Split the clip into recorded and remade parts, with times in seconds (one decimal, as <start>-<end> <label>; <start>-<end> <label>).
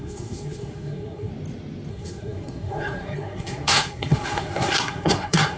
0.0-1.3 remade; 1.3-1.9 recorded; 1.9-5.6 remade